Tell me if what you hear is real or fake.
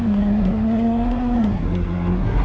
fake